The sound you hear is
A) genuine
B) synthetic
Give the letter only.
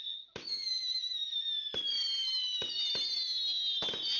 A